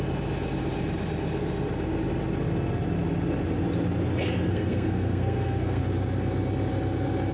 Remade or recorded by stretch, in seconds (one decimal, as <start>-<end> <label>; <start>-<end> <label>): 0.0-4.5 recorded; 4.5-5.8 remade; 5.8-7.3 recorded